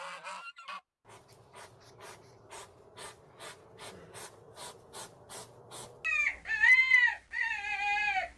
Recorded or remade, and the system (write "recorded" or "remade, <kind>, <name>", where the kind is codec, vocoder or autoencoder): recorded